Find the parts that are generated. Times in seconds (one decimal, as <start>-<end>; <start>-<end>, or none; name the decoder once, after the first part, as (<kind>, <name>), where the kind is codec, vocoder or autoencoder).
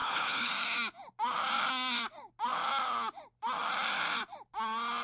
0.0-0.5 (codec, HILCodec)